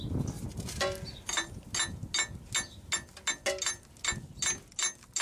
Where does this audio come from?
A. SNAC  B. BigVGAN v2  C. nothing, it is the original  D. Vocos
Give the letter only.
C